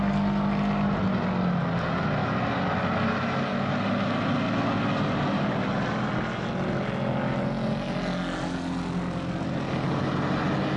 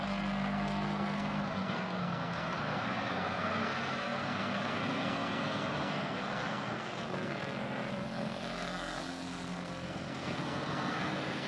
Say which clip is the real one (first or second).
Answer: first